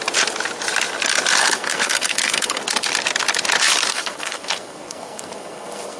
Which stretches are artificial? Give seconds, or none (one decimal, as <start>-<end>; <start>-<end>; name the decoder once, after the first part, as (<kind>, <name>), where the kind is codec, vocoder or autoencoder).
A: 1.4-2.6 (codec, SNAC); 3.9-6.0